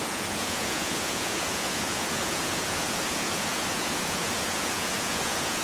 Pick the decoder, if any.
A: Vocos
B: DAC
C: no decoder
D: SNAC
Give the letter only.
A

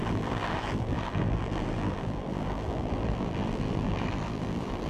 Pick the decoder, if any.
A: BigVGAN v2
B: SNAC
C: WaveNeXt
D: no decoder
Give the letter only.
A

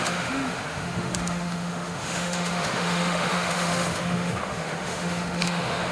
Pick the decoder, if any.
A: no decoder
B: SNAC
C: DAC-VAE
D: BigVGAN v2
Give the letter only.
C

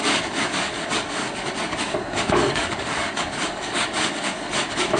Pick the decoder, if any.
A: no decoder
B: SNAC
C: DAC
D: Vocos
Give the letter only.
C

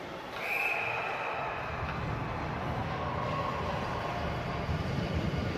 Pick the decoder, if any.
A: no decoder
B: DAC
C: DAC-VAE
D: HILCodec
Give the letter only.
A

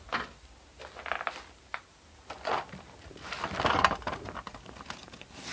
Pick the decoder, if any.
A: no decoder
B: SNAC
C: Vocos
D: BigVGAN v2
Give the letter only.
A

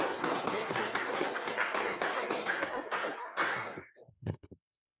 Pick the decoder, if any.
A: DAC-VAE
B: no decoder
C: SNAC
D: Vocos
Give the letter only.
C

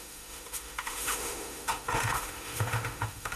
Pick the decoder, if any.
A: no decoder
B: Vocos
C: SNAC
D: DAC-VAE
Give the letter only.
D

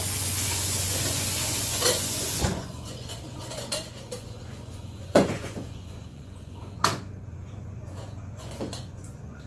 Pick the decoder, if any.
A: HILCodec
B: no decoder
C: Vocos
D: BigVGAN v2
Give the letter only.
C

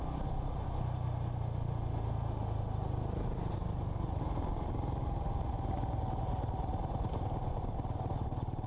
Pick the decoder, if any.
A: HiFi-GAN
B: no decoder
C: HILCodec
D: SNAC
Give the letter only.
B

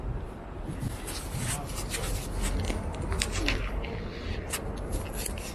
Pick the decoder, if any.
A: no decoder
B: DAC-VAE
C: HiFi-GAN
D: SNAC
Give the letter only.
A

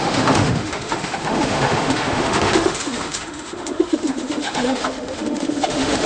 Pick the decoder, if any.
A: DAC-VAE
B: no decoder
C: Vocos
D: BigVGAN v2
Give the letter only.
A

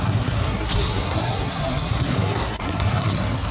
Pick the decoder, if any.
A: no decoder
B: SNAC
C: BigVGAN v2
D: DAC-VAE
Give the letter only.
B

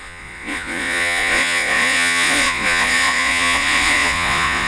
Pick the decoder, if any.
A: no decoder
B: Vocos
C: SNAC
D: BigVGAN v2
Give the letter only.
B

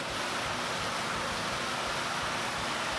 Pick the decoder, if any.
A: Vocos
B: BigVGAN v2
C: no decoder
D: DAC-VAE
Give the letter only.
C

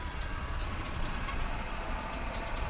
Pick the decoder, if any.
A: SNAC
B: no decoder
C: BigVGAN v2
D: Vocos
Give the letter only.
D